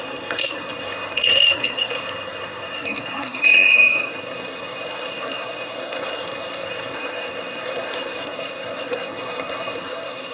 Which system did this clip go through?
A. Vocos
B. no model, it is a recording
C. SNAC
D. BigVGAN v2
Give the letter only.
C